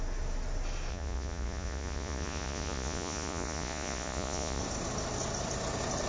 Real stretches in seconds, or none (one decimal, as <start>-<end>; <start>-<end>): 0.0-0.9; 4.6-6.1